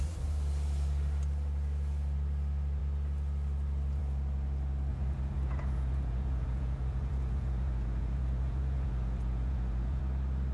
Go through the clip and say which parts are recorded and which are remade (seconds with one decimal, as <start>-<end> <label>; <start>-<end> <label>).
0.0-4.9 recorded; 4.9-10.0 remade; 10.0-10.5 recorded